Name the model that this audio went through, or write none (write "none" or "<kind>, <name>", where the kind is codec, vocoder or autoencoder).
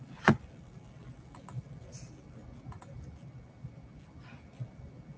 none